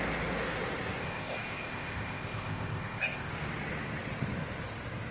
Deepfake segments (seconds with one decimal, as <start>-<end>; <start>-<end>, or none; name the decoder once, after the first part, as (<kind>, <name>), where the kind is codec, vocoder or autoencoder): 1.0-3.3 (codec, ZipCodec)